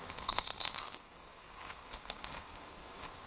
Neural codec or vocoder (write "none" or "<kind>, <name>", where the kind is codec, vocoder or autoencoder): codec, SNAC